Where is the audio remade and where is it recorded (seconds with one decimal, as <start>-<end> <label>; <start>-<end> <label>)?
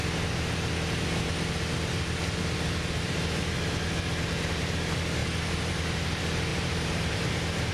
0.0-2.8 recorded; 2.8-3.6 remade; 3.6-6.5 recorded; 6.5-7.3 remade; 7.3-7.7 recorded